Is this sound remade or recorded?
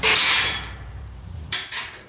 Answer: remade